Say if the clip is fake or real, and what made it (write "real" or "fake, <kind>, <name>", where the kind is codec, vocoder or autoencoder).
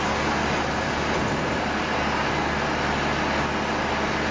real